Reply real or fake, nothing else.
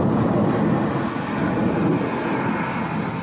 real